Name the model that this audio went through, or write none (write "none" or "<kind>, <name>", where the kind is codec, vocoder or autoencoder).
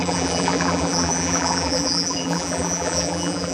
vocoder, BigVGAN v2